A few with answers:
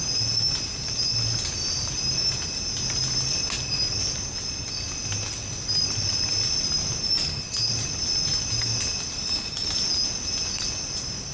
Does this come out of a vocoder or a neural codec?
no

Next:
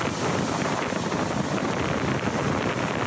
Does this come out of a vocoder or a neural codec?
no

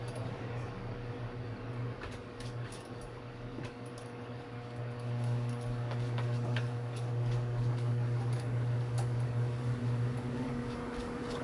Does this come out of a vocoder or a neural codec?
yes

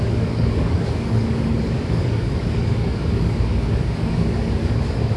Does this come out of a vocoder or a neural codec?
yes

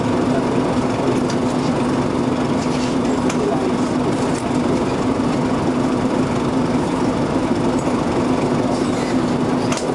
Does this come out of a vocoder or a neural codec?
no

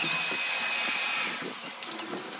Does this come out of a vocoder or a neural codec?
no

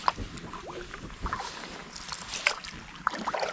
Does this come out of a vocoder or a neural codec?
no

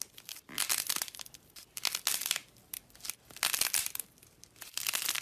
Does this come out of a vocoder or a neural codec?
no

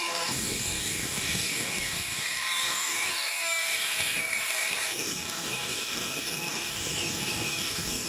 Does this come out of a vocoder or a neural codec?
yes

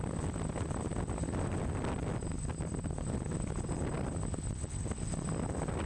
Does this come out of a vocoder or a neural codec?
no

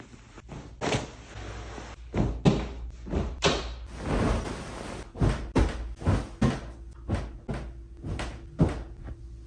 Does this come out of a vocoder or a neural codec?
no